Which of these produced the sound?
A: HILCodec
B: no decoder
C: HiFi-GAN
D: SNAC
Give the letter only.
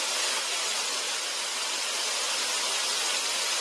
B